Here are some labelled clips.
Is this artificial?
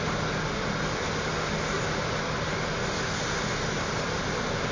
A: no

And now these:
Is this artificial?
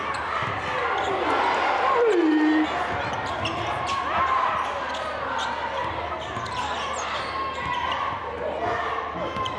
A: no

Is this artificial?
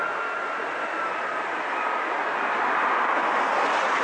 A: no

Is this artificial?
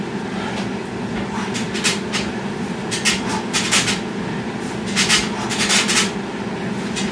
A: no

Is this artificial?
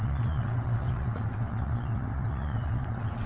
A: yes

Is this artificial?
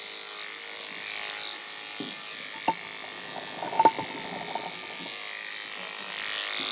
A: no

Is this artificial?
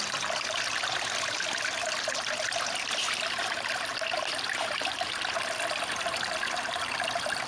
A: no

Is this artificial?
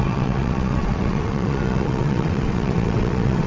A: yes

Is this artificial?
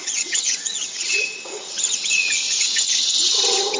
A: yes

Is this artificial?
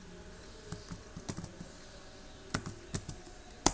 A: no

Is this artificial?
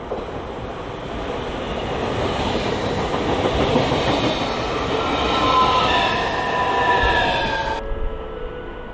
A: no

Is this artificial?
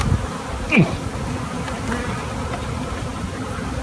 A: no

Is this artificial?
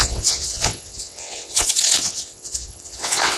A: yes